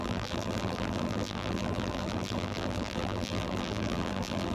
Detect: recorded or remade remade